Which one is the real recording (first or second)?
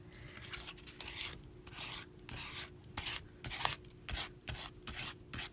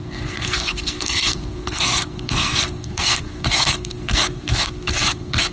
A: first